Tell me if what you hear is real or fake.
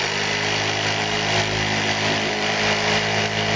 real